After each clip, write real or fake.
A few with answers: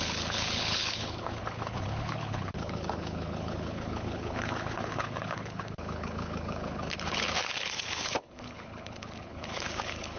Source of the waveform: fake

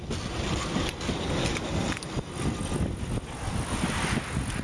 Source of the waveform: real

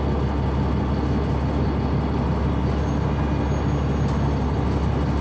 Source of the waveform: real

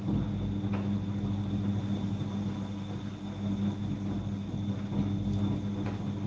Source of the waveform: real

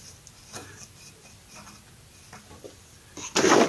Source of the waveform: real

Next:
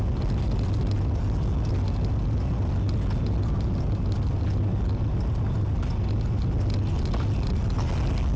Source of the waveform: real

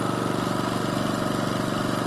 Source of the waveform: real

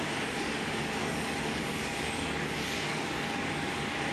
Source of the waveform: fake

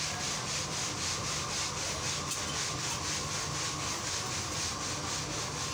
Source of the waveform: real